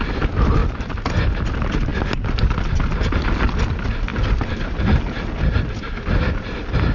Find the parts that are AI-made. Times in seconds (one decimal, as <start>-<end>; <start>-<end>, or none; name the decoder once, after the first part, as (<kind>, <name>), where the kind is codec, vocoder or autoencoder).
none